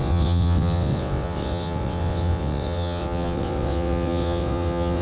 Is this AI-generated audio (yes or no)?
yes